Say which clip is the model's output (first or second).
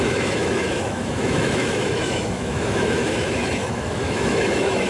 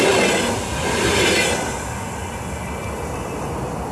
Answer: first